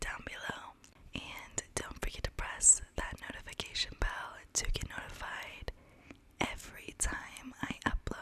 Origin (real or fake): real